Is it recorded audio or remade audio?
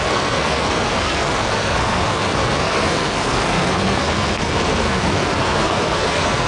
remade